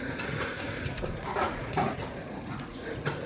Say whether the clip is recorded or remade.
remade